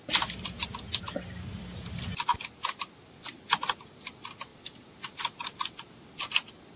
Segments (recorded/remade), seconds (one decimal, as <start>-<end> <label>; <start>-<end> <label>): 0.0-4.5 recorded; 4.5-6.0 remade; 6.0-6.8 recorded